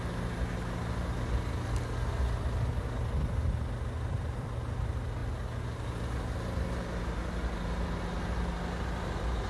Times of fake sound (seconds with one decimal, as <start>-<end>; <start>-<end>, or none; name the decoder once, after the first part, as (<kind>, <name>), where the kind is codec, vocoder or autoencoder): none

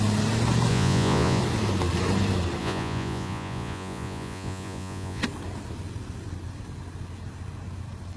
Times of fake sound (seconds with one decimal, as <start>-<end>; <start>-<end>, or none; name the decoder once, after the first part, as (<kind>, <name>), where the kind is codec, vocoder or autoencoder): 0.7-1.4 (vocoder, Vocos); 2.6-5.2

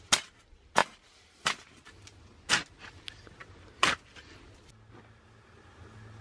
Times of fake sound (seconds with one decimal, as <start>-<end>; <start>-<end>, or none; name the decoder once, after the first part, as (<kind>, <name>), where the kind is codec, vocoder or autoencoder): none

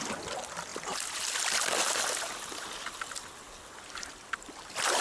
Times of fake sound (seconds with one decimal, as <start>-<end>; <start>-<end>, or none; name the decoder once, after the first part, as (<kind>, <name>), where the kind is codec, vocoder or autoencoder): none

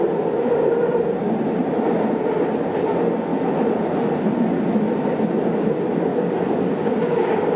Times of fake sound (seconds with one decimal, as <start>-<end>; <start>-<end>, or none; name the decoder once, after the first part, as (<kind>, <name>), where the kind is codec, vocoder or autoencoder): 6.1-7.6 (codec, DAC)

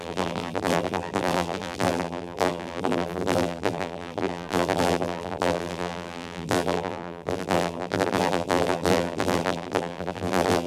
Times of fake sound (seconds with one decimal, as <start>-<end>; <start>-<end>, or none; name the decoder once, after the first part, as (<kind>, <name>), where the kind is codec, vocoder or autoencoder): 0.0-10.7 (vocoder, BigVGAN v2)

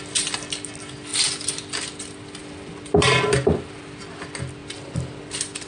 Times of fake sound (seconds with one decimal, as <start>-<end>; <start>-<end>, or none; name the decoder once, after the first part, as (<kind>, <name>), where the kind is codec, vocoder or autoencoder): 2.4-4.0 (vocoder, BigVGAN v2)

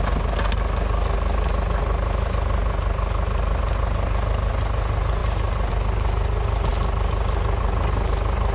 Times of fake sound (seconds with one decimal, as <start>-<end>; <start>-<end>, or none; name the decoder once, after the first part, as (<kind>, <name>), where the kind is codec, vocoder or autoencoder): none